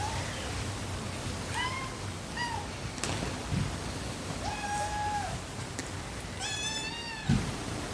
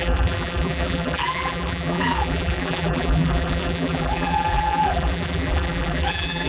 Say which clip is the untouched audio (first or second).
first